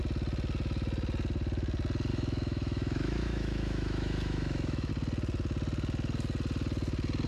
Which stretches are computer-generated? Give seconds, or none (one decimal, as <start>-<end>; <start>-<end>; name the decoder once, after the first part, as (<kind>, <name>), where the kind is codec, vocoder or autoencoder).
2.1-4.9 (autoencoder, DAC-VAE)